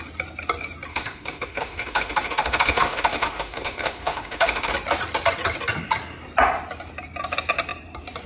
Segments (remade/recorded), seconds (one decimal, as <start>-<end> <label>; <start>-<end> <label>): 0.0-0.9 recorded; 0.9-4.7 remade; 4.7-8.3 recorded